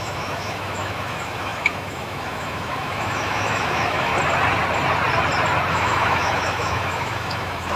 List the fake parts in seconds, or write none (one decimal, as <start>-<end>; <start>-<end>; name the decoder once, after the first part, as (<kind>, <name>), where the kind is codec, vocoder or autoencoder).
0.0-4.1 (autoencoder, DAC-VAE); 5.7-7.8